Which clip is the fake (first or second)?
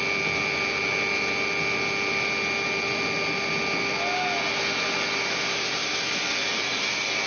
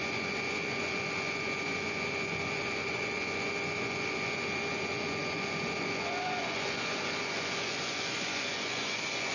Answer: second